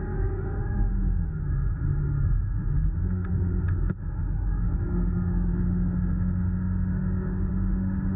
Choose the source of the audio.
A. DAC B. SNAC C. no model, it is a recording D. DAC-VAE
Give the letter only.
D